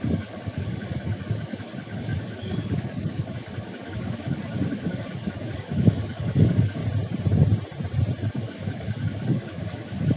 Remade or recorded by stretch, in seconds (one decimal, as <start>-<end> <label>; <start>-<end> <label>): 0.0-6.8 remade; 6.8-8.3 recorded; 8.3-10.2 remade